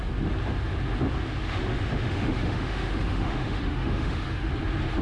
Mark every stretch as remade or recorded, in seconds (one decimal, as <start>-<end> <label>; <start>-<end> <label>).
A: 0.0-1.5 recorded; 1.5-4.5 remade; 4.5-5.0 recorded